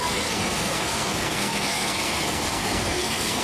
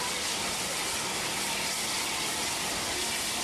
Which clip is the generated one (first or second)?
first